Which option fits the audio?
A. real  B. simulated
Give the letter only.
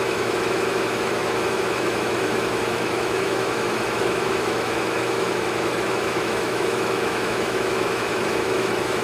B